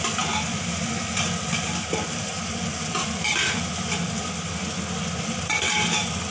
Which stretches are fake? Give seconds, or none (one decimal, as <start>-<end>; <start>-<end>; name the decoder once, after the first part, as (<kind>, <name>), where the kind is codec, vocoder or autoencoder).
0.5-4.3 (vocoder, BigVGAN v2)